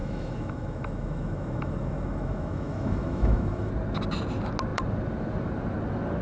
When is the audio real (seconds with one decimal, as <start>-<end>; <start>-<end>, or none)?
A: 3.7-6.2